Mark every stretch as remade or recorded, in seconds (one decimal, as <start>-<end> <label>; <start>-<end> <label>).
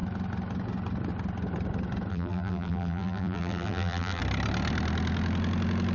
0.0-2.1 recorded; 2.1-4.2 remade; 4.2-5.9 recorded